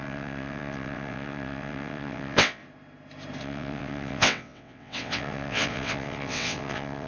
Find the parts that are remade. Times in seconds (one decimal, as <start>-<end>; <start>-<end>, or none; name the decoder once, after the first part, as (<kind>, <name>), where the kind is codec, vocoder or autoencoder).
0.0-2.6 (vocoder, WaveNeXt); 3.4-7.1